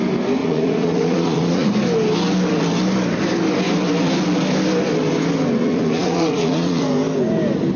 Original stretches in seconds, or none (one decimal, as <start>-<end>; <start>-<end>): 0.0-0.4; 1.7-5.6; 6.8-7.8